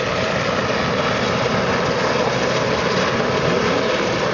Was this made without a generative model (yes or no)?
yes